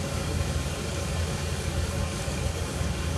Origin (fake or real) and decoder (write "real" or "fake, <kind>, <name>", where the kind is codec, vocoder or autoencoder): fake, codec, DAC